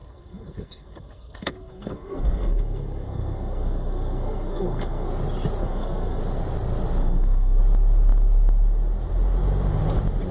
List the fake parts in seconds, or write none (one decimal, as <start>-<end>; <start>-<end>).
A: 0.0-5.1; 5.6-6.2; 7.0-7.6